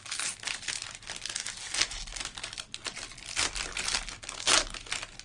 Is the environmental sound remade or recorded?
recorded